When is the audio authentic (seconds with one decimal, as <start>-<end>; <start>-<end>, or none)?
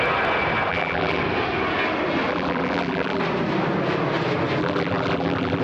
0.0-0.7; 1.2-2.3; 3.2-4.6